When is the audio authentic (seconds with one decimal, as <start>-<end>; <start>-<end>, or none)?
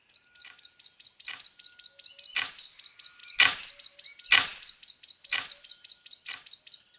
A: 0.0-7.0